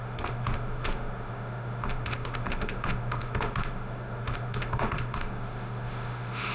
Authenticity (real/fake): fake